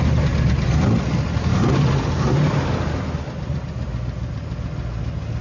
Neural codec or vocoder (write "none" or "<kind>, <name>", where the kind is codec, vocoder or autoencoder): none